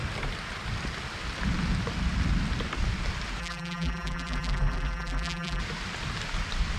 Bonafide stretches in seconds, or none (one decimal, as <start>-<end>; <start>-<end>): 0.0-3.4; 5.6-6.8